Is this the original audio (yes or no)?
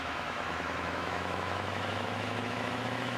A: no